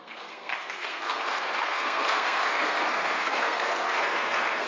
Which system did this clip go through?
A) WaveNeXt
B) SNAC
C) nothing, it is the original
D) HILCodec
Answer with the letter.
B